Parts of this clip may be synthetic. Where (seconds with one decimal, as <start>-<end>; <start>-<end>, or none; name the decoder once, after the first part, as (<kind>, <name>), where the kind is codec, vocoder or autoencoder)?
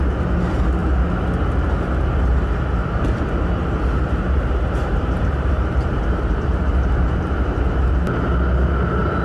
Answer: 3.6-7.9 (vocoder, BigVGAN v2)